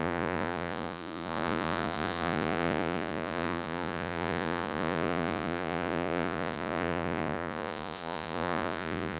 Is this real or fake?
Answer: fake